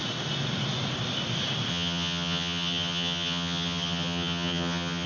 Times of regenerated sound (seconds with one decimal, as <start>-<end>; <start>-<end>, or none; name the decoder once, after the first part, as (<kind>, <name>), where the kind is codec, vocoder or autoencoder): 1.7-5.1 (vocoder, HiFi-GAN)

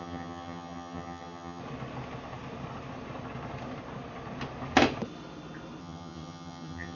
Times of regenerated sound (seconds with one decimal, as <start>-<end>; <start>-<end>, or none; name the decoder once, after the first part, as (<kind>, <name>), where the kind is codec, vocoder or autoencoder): 0.0-1.6 (vocoder, HiFi-GAN); 5.8-7.0

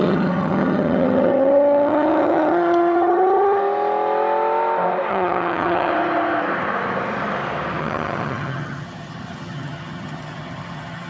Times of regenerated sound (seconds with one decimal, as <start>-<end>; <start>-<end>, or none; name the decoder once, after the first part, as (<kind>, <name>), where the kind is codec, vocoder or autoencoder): 0.0-3.6 (vocoder, HiFi-GAN); 5.1-5.9; 7.8-11.1

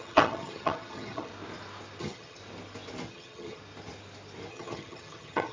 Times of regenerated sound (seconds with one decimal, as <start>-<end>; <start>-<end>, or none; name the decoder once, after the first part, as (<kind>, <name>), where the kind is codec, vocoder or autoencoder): 0.0-1.3 (vocoder, HiFi-GAN); 2.0-2.4; 3.1-3.6; 4.5-5.5